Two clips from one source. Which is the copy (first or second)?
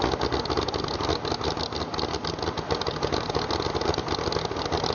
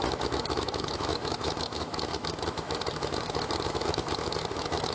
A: second